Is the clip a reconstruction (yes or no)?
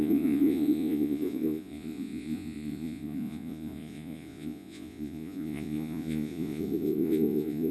yes